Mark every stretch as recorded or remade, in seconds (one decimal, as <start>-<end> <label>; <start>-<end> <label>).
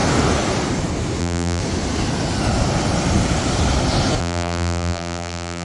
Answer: 0.0-1.2 recorded; 1.2-1.6 remade; 1.6-4.2 recorded; 4.2-5.6 remade